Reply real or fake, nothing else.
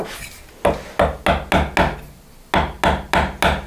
real